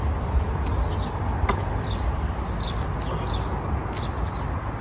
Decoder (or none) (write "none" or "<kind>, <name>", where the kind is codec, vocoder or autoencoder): none